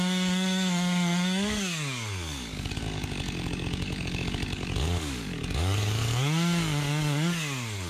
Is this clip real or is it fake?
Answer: fake